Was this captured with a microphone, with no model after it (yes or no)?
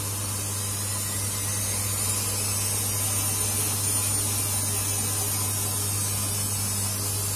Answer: yes